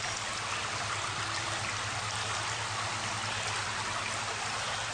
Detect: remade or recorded recorded